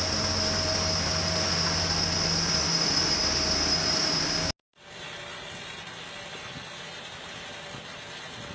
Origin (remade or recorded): recorded